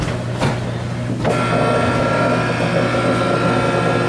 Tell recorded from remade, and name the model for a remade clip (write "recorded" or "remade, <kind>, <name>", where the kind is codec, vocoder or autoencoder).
recorded